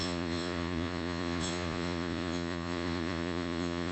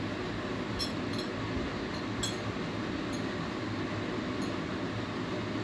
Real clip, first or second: second